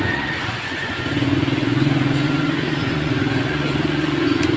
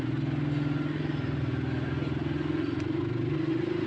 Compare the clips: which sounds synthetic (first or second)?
first